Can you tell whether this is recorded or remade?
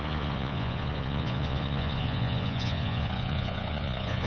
remade